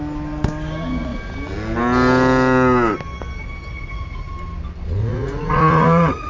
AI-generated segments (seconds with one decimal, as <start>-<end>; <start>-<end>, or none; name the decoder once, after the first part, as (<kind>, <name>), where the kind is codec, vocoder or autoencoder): 3.7-4.3 (vocoder, Vocos); 5.0-6.3

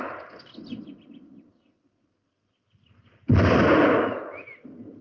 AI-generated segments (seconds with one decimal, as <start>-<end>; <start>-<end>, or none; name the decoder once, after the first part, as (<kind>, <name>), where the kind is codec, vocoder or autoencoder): none

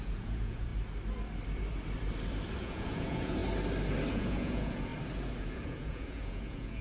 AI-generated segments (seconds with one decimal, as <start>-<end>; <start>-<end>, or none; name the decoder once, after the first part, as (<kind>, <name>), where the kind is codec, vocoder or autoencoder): 0.0-0.7 (vocoder, Vocos); 2.6-3.4; 4.1-4.9; 5.4-6.8

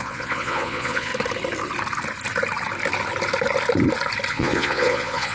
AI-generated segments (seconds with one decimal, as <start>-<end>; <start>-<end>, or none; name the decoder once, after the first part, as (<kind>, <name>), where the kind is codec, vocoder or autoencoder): 0.0-1.1 (vocoder, Vocos); 4.3-5.3

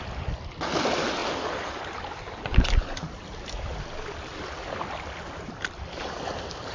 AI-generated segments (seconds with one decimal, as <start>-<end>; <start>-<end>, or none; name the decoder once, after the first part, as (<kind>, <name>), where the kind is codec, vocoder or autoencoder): none

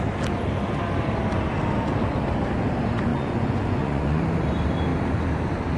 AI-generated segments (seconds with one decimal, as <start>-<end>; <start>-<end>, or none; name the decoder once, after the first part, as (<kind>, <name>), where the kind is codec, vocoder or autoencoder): 3.1-4.2 (vocoder, Vocos)

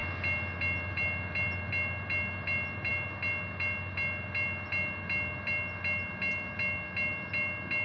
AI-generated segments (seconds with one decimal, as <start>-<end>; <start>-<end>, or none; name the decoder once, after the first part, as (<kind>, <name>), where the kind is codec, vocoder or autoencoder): none